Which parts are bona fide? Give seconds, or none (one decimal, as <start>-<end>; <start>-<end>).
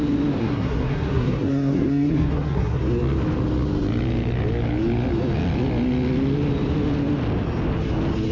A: 0.0-0.4; 2.8-8.3